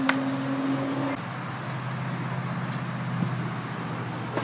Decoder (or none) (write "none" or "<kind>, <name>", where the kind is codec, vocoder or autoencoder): none